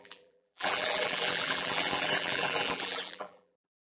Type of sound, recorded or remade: remade